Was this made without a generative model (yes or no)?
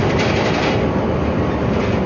yes